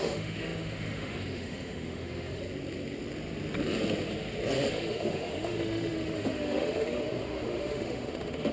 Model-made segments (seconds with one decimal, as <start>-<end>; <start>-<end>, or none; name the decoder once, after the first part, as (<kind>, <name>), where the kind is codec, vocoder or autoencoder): 0.0-2.4 (autoencoder, DAC-VAE); 4.7-8.5